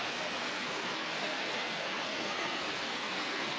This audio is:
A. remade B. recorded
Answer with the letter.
A